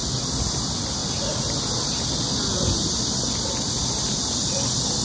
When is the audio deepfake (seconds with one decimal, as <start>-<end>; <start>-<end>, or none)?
none